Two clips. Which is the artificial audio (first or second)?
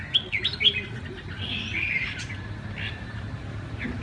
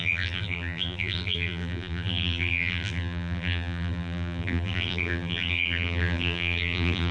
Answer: second